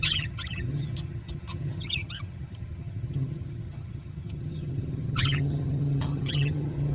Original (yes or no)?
no